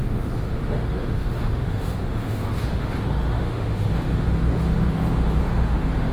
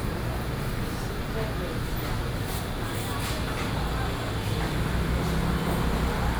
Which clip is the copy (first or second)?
first